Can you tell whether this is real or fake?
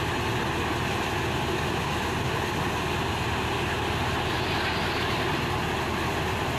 real